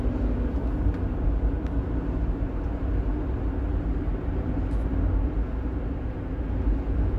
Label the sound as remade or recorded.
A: recorded